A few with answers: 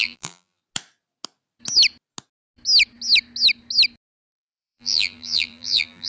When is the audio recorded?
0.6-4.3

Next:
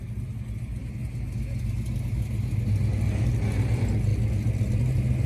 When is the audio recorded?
0.0-5.3

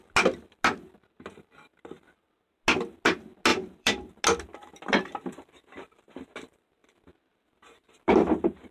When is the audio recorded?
0.0-3.5; 4.1-4.9; 6.3-6.8

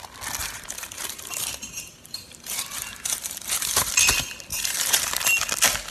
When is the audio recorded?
0.0-0.4; 3.9-4.5; 5.1-5.9

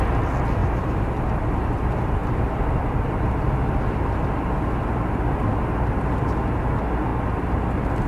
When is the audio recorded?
0.0-0.6; 1.1-2.2; 3.4-8.1

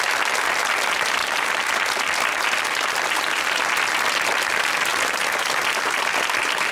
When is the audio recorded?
0.0-1.2; 3.4-4.9; 6.0-6.7